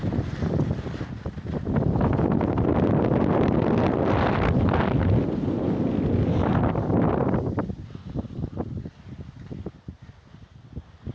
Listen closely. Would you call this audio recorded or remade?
recorded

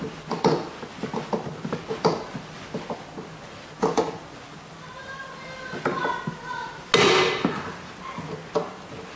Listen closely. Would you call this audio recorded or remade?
recorded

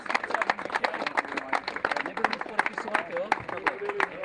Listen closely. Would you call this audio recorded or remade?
recorded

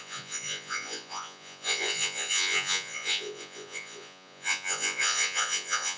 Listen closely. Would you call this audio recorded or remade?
remade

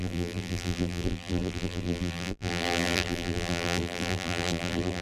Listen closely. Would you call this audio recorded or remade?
remade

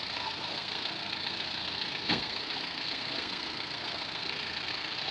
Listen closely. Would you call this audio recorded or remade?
remade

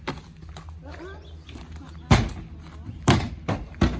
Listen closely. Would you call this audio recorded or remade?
recorded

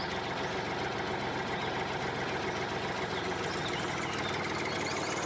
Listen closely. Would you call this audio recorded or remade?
recorded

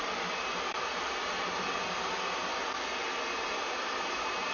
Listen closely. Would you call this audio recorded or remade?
remade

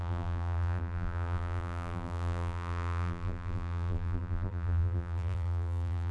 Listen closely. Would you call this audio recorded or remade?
remade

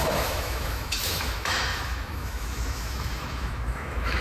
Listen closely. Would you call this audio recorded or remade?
remade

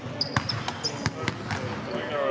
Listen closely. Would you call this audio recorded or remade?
recorded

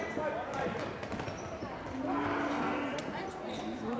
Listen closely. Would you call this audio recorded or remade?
recorded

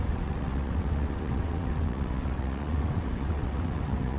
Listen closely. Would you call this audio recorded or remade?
remade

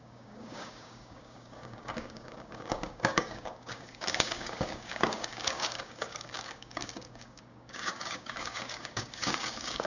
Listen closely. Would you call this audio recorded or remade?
remade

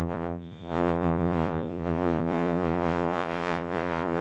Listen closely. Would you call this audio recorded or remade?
remade